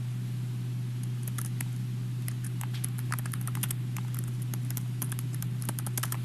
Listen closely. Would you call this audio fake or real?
real